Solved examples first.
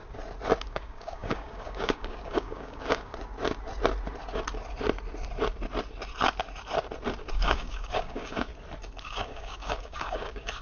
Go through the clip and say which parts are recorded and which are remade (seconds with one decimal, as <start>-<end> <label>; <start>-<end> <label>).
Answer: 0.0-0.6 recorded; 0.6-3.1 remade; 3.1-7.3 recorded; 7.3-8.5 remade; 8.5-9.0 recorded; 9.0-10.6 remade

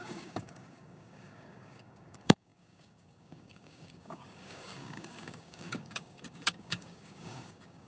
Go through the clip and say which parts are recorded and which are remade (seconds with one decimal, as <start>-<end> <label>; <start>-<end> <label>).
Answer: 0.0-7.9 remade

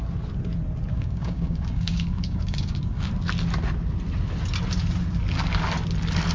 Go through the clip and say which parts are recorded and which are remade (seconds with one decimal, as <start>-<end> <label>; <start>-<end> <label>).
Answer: 0.0-0.9 recorded; 0.9-3.1 remade; 3.1-6.3 recorded

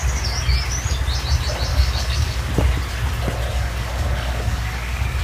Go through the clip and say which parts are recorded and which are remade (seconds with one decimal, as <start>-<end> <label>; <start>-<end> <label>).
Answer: 0.0-1.7 recorded; 1.7-2.5 remade; 2.5-3.5 recorded; 3.5-5.2 remade

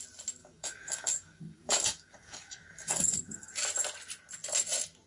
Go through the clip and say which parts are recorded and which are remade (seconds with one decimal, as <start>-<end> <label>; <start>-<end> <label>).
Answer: 0.0-0.4 recorded; 0.4-3.5 remade; 3.5-5.1 recorded

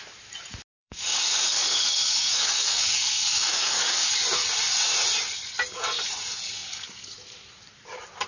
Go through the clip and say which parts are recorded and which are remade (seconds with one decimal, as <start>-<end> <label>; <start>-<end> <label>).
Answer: 0.0-0.8 recorded; 0.8-4.1 remade; 4.1-8.3 recorded

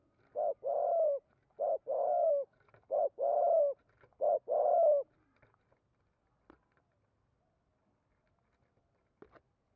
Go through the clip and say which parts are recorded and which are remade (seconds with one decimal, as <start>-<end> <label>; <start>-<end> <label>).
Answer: 0.0-2.0 recorded; 2.0-2.7 remade; 2.7-9.8 recorded

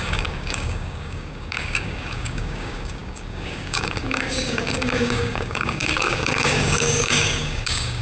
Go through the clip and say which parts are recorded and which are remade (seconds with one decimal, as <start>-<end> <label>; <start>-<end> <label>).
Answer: 0.0-8.0 remade